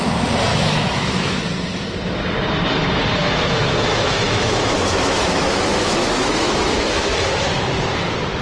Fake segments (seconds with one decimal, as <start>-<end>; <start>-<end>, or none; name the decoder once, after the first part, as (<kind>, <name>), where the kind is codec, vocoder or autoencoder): 0.5-1.4 (autoencoder, DAC-VAE); 3.2-7.3